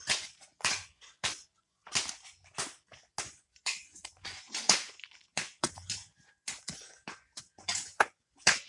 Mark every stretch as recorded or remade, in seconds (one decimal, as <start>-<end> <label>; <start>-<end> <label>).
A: 0.0-1.8 remade; 1.8-3.2 recorded; 3.2-8.7 remade